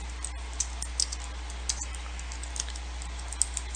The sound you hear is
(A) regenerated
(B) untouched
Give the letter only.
B